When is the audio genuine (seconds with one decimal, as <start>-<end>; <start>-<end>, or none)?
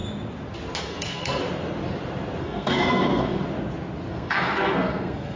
0.0-0.8; 1.4-2.4; 3.4-4.1